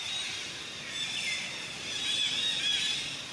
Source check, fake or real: real